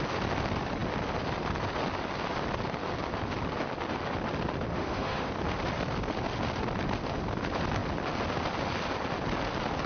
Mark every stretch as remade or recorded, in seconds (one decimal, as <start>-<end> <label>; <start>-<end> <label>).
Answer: 0.0-4.7 recorded; 4.7-5.3 remade; 5.3-9.9 recorded